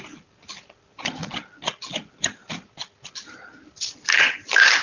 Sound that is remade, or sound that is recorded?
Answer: recorded